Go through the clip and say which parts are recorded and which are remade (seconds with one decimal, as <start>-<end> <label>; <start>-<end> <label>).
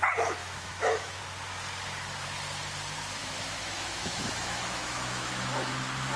0.0-0.4 recorded; 0.4-1.2 remade; 1.2-3.2 recorded; 3.2-5.7 remade; 5.7-6.2 recorded